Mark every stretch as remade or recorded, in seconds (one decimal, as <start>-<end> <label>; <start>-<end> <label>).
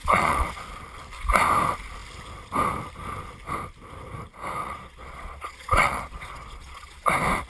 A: 0.0-0.6 remade; 0.6-4.6 recorded; 4.6-7.0 remade; 7.0-7.5 recorded